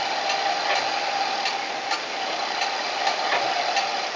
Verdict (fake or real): real